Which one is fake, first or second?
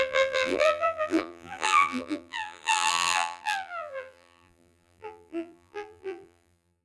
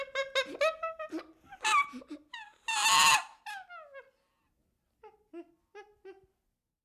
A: first